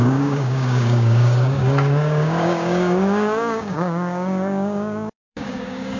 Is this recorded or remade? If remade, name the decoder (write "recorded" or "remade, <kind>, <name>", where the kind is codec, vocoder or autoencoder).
remade, codec, DAC